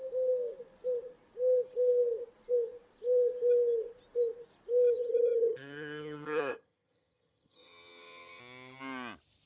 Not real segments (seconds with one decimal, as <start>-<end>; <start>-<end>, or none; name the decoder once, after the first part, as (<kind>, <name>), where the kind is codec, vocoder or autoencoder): 5.0-8.4 (vocoder, HiFi-GAN)